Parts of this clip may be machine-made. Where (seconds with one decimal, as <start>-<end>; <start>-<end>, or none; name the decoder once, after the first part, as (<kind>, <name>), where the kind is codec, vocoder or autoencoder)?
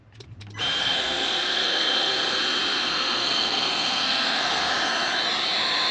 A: 0.8-2.4 (codec, SNAC); 2.8-4.7